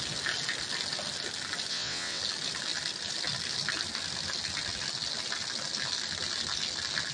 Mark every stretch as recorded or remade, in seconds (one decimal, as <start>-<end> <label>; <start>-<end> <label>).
0.0-1.7 recorded; 1.7-2.2 remade; 2.2-7.1 recorded